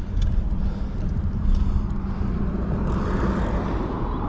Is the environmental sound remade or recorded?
recorded